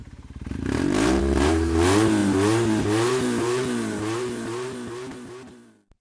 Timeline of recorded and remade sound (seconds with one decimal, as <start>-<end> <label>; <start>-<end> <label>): 0.0-6.0 remade